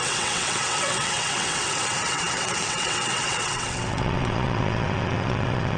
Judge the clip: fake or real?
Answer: fake